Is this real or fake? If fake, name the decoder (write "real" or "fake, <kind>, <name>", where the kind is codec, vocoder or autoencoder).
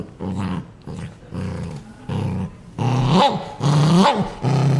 real